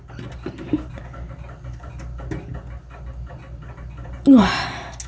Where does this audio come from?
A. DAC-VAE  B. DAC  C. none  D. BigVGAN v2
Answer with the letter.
C